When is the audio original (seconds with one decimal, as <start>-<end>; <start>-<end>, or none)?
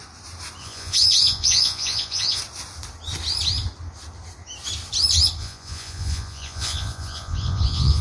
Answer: 0.0-0.6; 2.4-5.4